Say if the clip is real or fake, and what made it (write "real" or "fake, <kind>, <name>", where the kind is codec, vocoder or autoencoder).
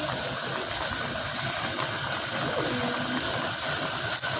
real